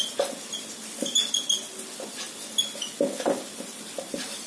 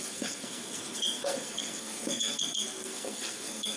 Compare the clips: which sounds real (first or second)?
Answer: first